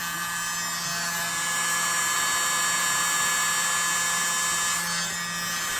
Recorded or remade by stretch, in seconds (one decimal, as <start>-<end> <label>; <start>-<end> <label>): 0.0-5.8 recorded